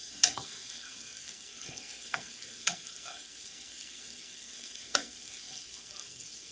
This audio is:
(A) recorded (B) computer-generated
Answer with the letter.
B